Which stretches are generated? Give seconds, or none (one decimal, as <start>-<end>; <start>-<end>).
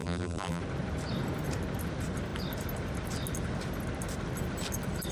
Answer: 0.0-0.6